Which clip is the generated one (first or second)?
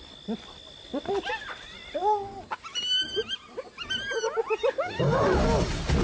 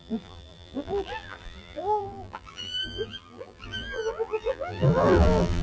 second